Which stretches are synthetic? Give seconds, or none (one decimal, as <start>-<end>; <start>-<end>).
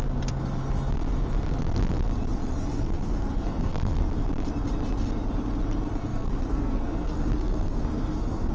2.7-4.1; 6.1-8.5